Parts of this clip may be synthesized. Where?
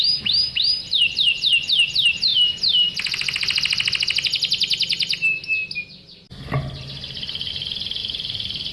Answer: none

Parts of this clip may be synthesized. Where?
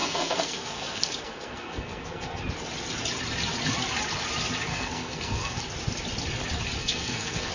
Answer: 0.0-2.4 (codec, SNAC); 4.7-5.6; 6.8-7.5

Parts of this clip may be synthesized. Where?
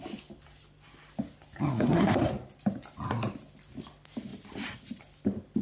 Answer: 1.7-2.3 (codec, SNAC)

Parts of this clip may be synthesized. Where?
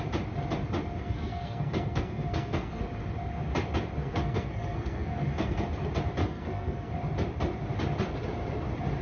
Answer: 1.0-2.8 (codec, SNAC); 4.0-5.7; 6.2-6.9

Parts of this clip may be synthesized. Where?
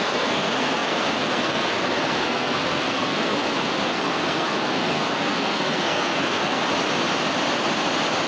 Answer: 0.0-6.6 (codec, SNAC)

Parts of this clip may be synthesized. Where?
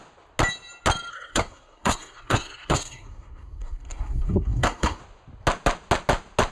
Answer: 1.1-5.0 (codec, SNAC)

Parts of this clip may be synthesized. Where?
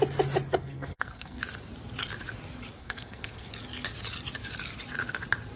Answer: 0.5-1.4 (codec, SNAC); 2.8-3.5